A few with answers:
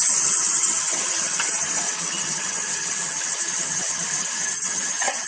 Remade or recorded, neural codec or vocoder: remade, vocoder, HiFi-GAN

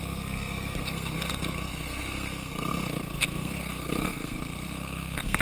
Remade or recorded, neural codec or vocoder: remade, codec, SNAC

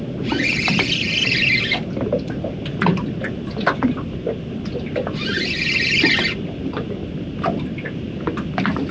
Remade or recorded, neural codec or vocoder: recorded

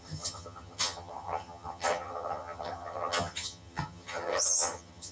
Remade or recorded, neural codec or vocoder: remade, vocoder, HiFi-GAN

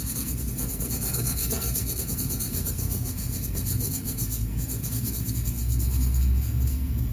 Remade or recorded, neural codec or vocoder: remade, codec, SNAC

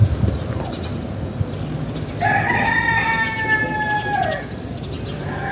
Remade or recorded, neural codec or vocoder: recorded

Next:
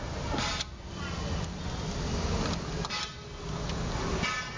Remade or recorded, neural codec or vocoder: recorded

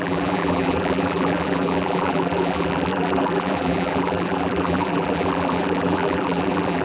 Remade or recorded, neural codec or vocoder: remade, vocoder, BigVGAN v2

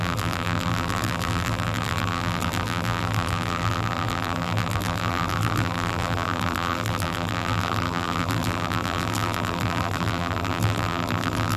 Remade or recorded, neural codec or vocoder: remade, vocoder, BigVGAN v2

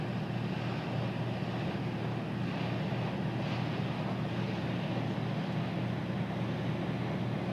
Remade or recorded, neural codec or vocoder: recorded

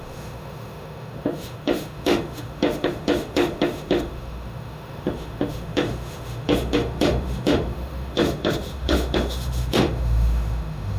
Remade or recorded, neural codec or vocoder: remade, autoencoder, DAC-VAE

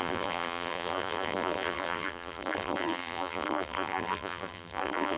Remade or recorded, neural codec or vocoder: remade, vocoder, BigVGAN v2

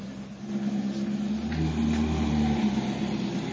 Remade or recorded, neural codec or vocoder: recorded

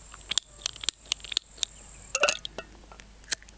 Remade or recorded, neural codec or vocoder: recorded